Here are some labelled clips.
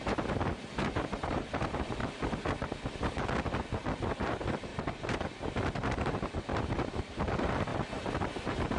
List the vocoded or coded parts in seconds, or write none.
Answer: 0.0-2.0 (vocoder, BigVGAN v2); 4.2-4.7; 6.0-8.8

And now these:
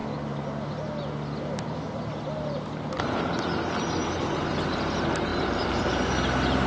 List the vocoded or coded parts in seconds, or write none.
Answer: 5.3-5.8 (vocoder, BigVGAN v2)

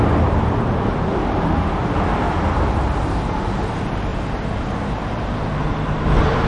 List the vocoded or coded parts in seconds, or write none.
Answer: 0.0-1.8 (vocoder, BigVGAN v2); 3.0-4.1; 4.6-6.5